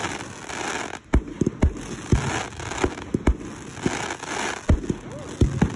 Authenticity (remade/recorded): recorded